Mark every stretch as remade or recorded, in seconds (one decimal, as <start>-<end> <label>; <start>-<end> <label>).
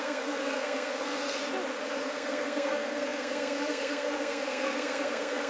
0.0-1.4 remade; 1.4-2.0 recorded; 2.0-5.5 remade